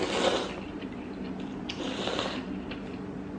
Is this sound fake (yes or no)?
no